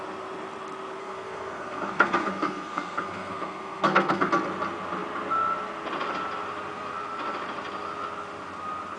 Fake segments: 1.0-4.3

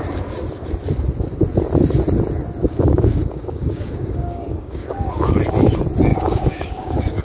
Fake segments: 2.6-5.4; 6.1-7.2

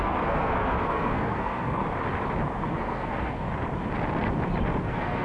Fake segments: 0.0-1.8; 2.7-3.5; 4.8-5.2